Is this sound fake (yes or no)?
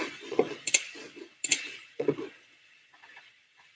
yes